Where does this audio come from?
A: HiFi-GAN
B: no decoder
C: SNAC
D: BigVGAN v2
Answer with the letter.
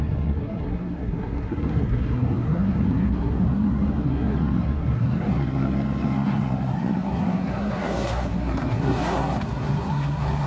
C